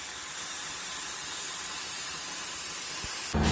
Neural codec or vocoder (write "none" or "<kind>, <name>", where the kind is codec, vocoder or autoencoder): vocoder, BigVGAN v2